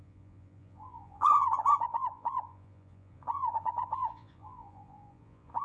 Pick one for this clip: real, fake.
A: fake